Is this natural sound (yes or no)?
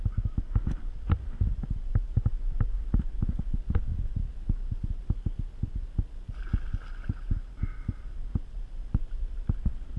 yes